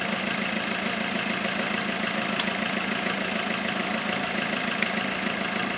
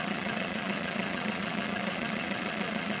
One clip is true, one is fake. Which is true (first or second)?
first